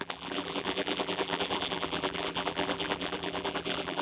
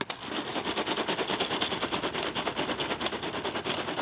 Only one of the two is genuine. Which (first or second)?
second